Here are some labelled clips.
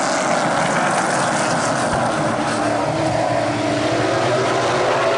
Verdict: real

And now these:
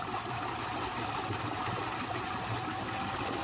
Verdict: real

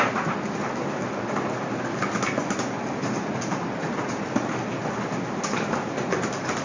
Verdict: real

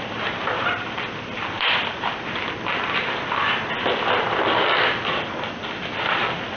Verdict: fake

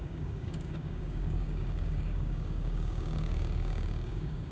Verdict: fake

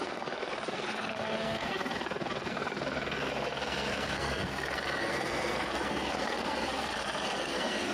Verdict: fake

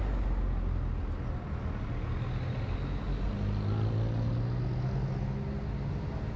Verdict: real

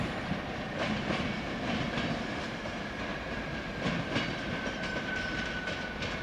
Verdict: real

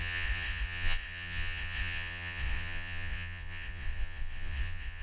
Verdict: fake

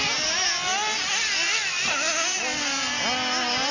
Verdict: real